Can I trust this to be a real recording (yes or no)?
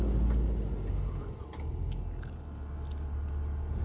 yes